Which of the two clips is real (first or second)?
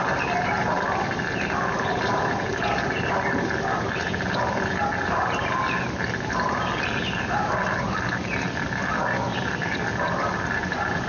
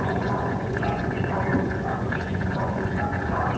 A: first